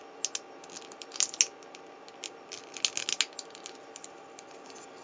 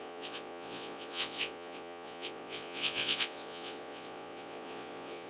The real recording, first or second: first